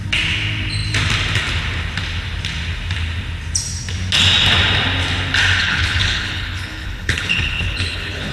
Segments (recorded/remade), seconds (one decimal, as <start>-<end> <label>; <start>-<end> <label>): 0.0-5.6 recorded; 5.6-8.3 remade